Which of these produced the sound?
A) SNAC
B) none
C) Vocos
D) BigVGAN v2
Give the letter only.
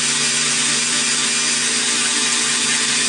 B